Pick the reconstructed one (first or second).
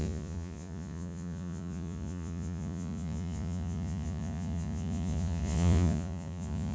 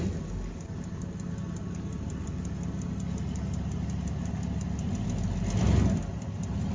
first